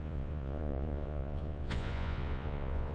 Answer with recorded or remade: remade